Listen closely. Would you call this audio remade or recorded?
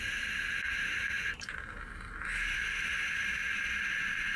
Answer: remade